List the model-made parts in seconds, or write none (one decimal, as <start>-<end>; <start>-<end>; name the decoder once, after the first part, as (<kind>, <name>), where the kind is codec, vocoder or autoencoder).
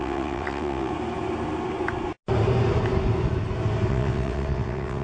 0.0-0.9 (vocoder, WaveNeXt); 3.9-5.0